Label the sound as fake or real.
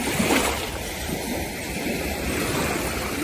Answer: fake